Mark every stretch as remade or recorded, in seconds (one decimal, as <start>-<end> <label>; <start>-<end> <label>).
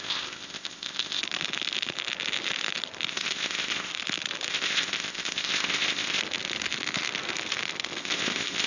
0.0-1.2 remade; 1.2-3.1 recorded; 3.1-3.9 remade; 3.9-4.5 recorded; 4.5-6.2 remade; 6.2-8.0 recorded; 8.0-8.7 remade